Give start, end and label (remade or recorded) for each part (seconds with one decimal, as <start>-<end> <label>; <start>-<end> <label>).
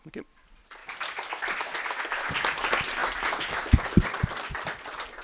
0.0-5.2 recorded